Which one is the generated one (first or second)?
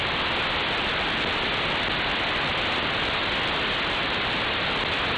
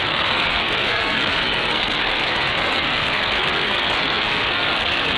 second